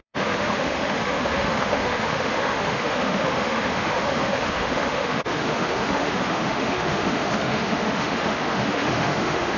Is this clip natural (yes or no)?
no